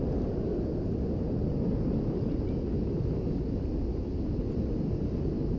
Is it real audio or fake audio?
real